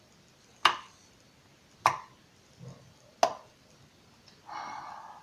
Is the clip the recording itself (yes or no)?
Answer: yes